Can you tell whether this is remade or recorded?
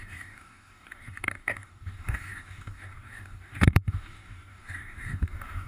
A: remade